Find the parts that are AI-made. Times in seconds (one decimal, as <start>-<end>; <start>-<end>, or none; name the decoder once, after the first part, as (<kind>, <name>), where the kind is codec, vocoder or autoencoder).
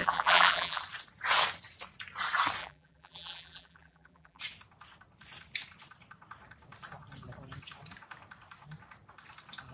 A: 0.0-0.8 (vocoder, BigVGAN v2); 2.6-4.4